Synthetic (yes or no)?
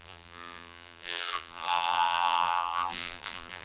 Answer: yes